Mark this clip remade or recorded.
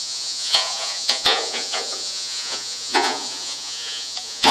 remade